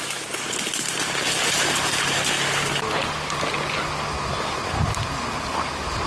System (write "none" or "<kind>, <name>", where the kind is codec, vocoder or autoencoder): none